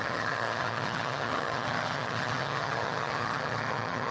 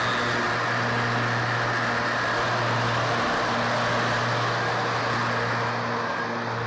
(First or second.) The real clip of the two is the second